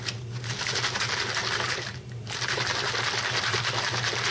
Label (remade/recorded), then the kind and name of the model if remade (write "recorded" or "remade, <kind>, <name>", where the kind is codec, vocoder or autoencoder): recorded